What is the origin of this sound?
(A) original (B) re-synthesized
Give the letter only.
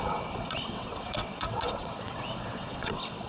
B